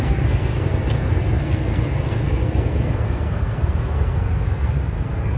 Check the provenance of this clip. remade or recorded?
remade